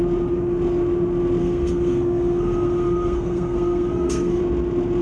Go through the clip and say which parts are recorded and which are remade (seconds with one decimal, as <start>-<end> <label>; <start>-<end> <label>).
0.0-1.4 recorded; 1.4-4.4 remade; 4.4-5.0 recorded